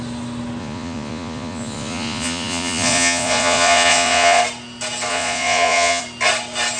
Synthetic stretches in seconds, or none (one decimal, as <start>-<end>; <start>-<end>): 0.6-4.4; 5.1-6.0